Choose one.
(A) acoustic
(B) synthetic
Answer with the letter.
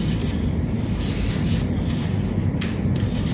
A